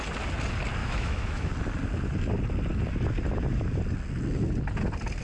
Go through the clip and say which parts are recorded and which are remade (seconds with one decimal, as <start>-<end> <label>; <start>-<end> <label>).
0.0-0.8 recorded; 0.8-1.5 remade; 1.5-5.2 recorded